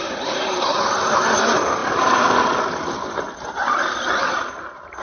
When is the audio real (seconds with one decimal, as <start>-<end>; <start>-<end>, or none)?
0.0-1.8; 3.2-5.0